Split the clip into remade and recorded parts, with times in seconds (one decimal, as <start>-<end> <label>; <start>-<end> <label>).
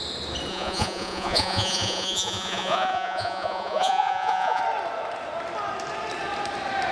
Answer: 0.0-0.5 recorded; 0.5-4.6 remade; 4.6-6.9 recorded